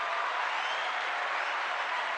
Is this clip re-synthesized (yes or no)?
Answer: no